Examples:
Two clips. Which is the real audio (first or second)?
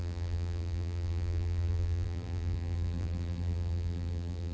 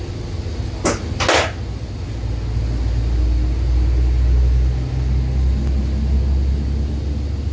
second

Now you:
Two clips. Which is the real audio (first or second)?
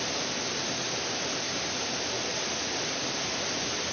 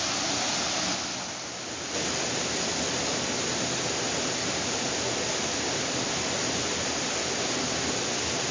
second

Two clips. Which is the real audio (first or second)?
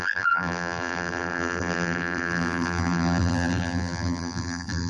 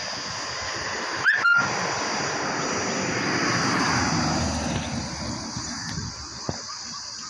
second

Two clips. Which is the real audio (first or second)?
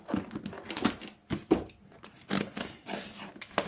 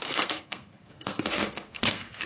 first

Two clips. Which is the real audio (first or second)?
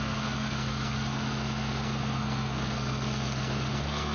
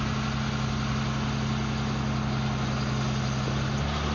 second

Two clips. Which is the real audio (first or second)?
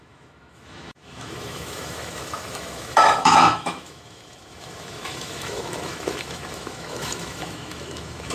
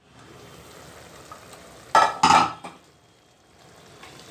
second